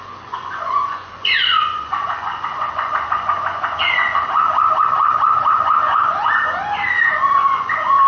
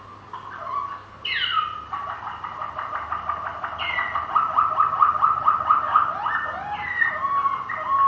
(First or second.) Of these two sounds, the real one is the second